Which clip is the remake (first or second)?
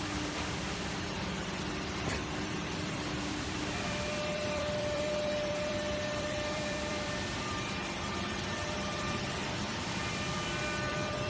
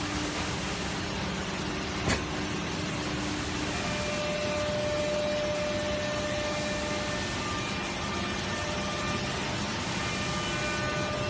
first